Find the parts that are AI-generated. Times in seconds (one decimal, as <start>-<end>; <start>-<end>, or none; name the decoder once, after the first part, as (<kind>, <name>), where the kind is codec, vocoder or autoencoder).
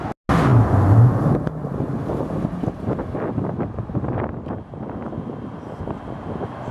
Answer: none